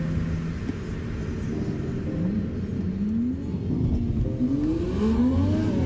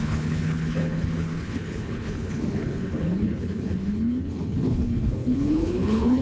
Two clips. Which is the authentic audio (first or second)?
first